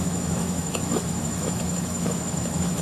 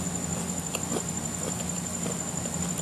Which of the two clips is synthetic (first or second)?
first